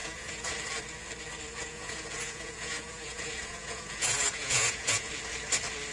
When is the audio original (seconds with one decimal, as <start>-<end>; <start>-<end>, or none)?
0.5-1.6; 5.1-5.9